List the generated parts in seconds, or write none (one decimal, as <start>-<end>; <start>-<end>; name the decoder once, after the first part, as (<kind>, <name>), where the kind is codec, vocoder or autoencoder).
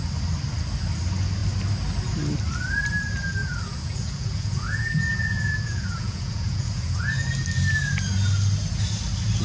3.4-7.0 (vocoder, Vocos)